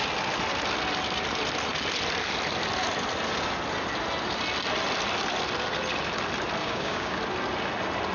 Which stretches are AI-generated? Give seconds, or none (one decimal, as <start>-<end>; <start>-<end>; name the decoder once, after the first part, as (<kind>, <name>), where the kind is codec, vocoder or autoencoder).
6.6-7.2 (codec, DAC)

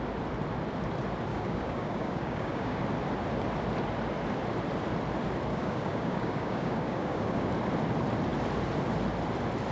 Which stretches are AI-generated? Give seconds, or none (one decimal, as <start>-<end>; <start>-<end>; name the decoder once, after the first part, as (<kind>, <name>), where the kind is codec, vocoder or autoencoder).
1.3-2.8 (codec, DAC); 5.5-7.5

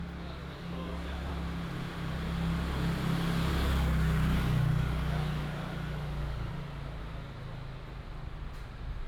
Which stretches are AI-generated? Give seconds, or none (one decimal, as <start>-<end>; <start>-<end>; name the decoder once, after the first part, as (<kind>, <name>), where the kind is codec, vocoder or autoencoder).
0.4-1.3 (codec, DAC); 3.5-6.5